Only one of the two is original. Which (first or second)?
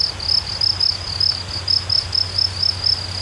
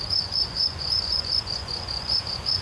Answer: first